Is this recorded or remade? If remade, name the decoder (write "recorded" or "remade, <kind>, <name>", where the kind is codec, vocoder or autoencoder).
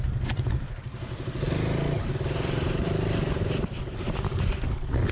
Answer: recorded